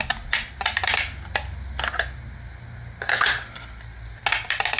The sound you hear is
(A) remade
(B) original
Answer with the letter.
B